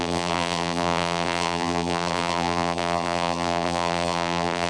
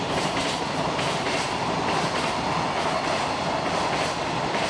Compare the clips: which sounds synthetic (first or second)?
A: first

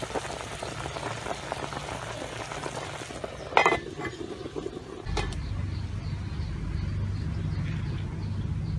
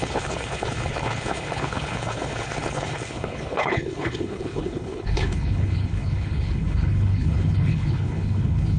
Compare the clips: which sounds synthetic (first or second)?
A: second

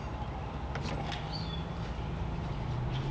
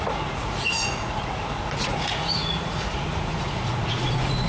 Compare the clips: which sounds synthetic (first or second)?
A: second